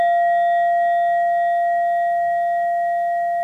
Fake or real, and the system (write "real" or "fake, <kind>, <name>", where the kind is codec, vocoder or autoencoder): real